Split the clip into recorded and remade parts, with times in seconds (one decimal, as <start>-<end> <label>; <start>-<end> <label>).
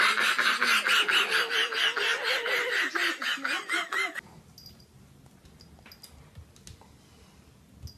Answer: 0.0-8.0 recorded